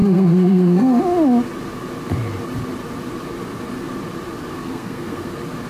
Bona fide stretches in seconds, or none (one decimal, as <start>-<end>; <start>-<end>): 1.0-4.5; 5.3-5.7

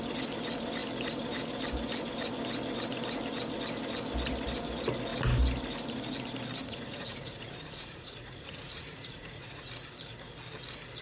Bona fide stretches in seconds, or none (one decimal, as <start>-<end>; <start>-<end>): 0.0-6.6; 9.7-11.0

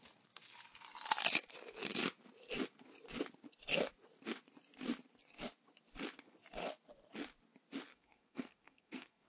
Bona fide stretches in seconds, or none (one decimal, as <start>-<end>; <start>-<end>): 0.0-7.9

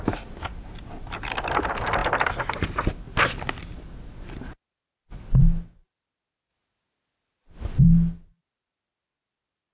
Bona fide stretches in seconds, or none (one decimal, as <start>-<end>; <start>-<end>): 0.0-9.7

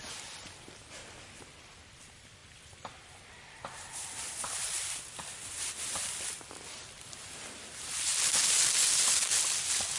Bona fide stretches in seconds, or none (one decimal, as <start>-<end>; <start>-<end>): 0.0-10.0

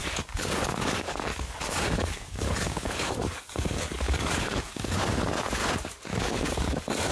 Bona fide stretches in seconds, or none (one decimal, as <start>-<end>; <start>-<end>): 5.6-6.2

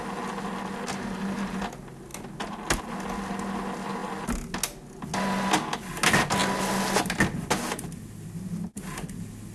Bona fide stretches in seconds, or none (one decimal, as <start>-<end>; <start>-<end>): 0.0-9.5